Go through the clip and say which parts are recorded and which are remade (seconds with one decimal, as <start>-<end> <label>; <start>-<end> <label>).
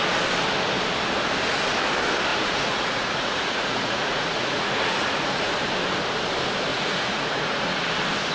0.0-2.3 recorded; 2.3-5.5 remade; 5.5-6.7 recorded; 6.7-7.8 remade; 7.8-8.3 recorded